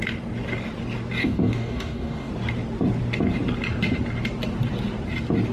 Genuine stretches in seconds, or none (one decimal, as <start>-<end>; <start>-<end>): 0.0-1.2; 2.3-5.5